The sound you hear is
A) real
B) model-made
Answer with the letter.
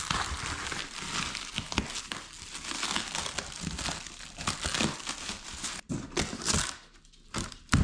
A